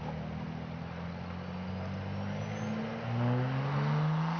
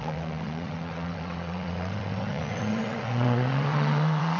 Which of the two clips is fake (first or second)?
second